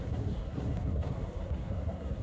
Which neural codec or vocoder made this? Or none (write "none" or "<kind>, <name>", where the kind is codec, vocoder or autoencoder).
codec, SNAC